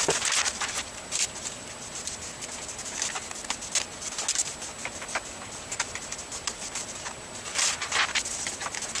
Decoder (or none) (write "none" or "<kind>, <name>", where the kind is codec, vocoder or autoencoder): none